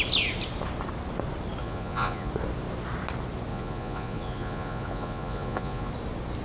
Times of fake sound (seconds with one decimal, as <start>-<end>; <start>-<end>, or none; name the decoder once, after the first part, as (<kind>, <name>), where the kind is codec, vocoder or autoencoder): 1.6-2.3 (vocoder, Vocos); 3.5-5.9